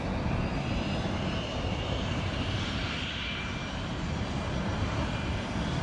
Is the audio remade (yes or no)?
yes